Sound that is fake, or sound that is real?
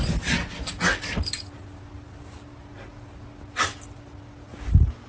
real